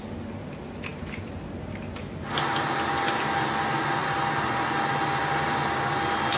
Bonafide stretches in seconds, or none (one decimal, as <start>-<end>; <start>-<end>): 0.0-6.4